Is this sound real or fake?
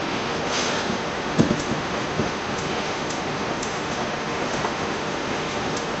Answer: fake